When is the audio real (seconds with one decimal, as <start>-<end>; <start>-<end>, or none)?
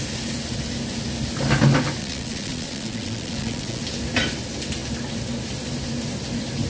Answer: 0.0-2.0; 3.8-6.7